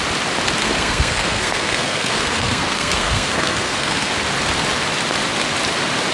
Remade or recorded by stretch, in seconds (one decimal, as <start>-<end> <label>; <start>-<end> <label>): 0.0-0.6 recorded; 0.6-4.1 remade; 4.1-6.1 recorded